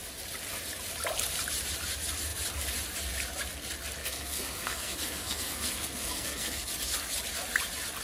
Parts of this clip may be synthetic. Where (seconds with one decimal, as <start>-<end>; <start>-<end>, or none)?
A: 4.0-6.7